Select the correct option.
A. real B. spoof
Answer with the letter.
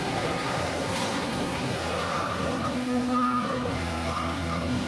B